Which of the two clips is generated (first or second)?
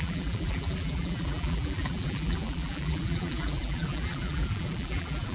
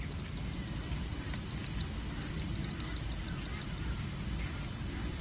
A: first